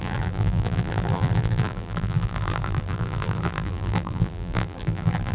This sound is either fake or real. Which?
fake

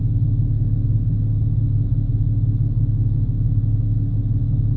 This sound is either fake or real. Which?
real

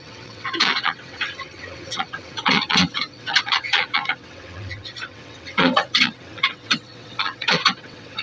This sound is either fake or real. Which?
fake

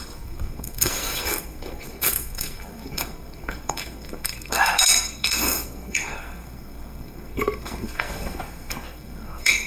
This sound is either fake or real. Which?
fake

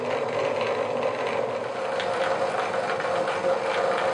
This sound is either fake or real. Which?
real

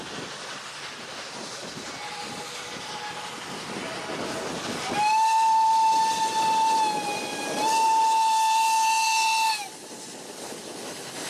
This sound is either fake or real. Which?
real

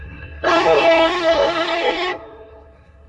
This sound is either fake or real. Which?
fake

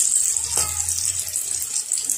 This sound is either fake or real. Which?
real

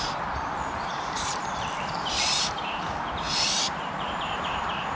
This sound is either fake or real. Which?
fake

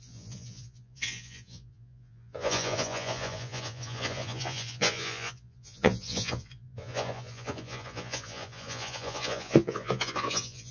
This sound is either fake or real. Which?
fake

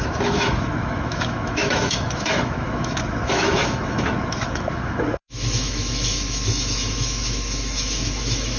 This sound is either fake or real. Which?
fake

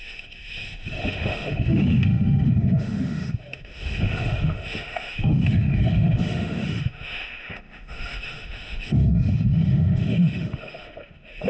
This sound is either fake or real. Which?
fake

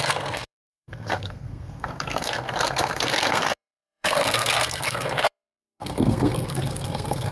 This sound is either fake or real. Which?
fake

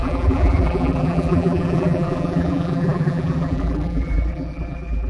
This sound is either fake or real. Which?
fake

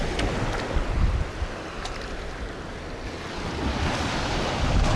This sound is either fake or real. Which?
real